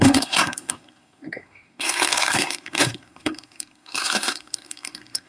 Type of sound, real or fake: fake